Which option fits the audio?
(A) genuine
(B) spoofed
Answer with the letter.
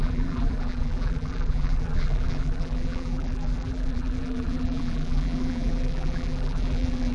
B